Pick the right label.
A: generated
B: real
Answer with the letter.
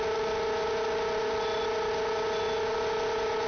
B